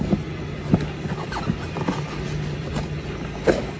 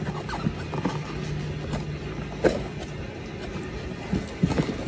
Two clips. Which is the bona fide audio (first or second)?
second